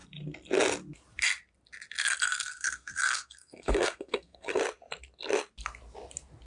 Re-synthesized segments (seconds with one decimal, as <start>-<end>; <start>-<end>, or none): 2.4-4.6